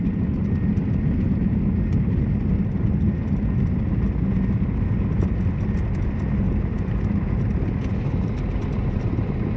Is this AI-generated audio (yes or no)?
no